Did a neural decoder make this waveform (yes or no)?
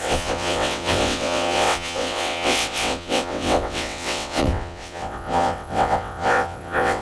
yes